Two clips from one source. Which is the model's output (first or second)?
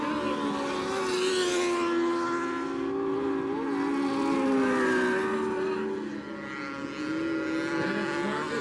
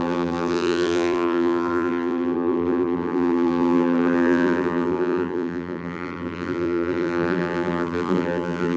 second